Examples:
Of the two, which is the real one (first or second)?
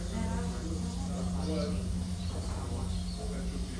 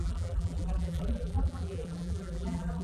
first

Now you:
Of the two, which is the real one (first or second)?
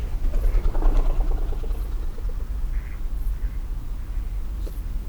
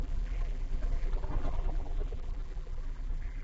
first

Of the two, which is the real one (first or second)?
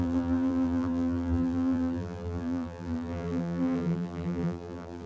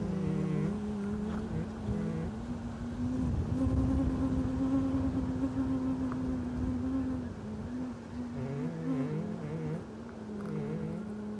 second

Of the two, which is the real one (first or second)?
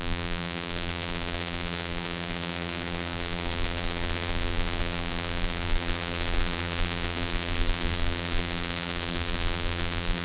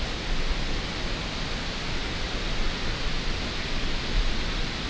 second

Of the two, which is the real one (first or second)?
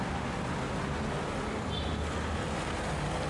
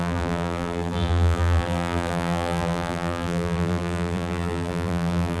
first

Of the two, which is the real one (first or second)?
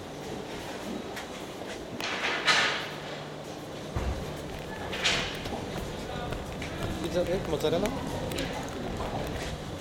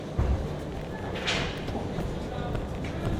second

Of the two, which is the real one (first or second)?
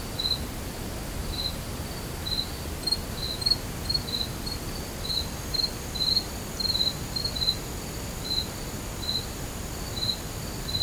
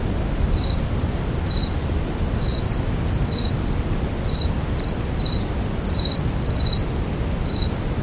first